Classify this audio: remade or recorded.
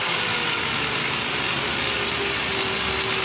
recorded